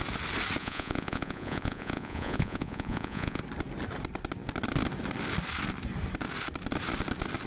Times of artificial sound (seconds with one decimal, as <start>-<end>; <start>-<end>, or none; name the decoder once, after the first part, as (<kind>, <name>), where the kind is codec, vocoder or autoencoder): 0.6-3.4 (vocoder, Vocos)